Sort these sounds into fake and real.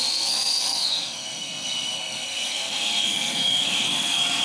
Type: fake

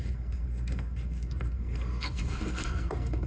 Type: fake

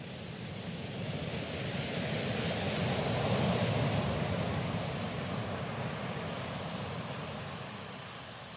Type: real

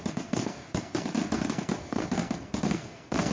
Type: fake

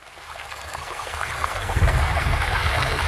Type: fake